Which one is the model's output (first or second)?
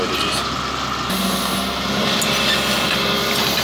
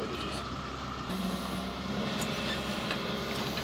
second